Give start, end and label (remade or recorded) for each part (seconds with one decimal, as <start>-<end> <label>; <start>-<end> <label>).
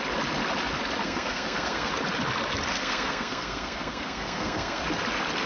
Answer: 0.0-1.0 recorded; 1.0-1.9 remade; 1.9-2.7 recorded; 2.7-4.8 remade; 4.8-5.5 recorded